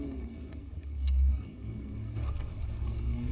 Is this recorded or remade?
remade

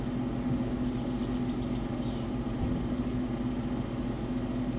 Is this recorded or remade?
recorded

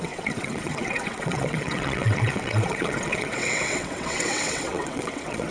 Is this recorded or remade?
remade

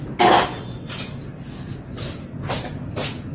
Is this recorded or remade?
recorded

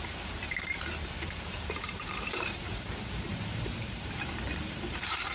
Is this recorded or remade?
remade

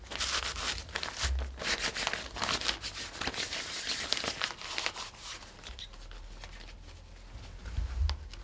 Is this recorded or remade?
recorded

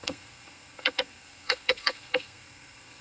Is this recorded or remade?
remade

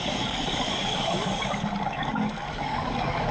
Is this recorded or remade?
remade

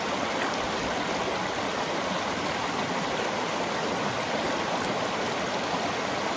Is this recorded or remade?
recorded